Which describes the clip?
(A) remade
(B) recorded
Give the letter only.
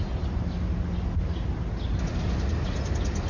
B